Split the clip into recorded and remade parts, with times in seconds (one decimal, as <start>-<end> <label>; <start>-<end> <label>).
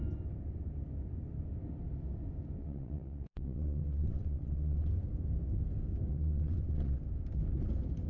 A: 0.0-2.6 recorded; 2.6-4.9 remade; 4.9-6.1 recorded; 6.1-7.0 remade; 7.0-8.1 recorded